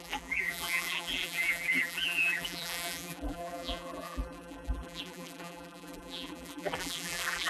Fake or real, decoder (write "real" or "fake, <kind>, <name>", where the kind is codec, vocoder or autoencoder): fake, vocoder, BigVGAN v2